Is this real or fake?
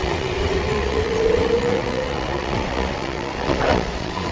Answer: fake